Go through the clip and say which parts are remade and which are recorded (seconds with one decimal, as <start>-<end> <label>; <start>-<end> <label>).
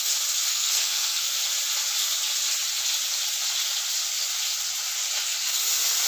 0.0-0.5 recorded; 0.5-1.4 remade; 1.4-6.1 recorded